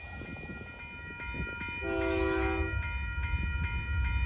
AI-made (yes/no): no